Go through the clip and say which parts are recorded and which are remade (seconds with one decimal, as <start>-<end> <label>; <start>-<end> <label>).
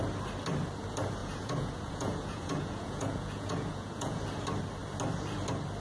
0.0-1.2 recorded; 1.2-4.2 remade; 4.2-5.8 recorded